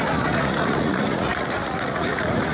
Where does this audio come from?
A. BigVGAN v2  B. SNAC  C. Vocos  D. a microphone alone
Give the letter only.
C